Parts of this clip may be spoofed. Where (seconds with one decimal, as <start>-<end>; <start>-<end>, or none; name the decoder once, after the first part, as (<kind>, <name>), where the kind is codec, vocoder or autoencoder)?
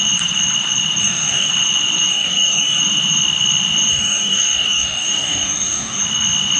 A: 1.0-1.5 (codec, DAC); 2.1-2.8; 3.9-6.0